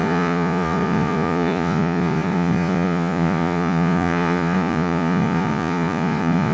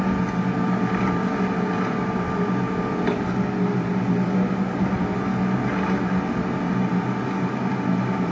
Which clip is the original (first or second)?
second